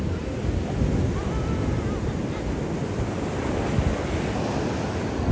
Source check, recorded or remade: recorded